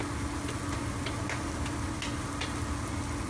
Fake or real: real